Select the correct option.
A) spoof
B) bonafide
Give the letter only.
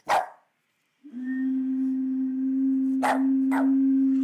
B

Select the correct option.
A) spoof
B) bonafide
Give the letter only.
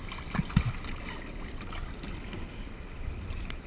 B